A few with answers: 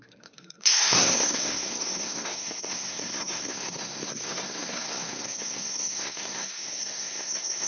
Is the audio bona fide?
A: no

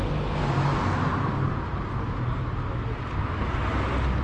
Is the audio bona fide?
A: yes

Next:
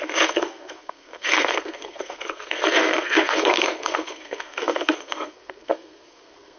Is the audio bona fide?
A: no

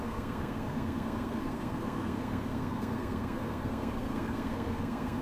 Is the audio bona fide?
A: no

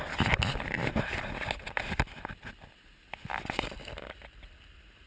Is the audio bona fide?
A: yes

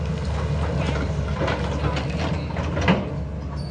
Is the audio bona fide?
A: yes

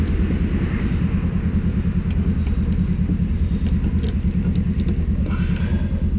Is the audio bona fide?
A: yes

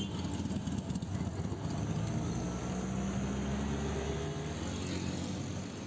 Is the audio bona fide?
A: yes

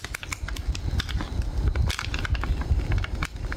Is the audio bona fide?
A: yes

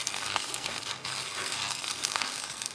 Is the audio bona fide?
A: no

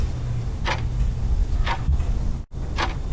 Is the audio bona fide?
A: yes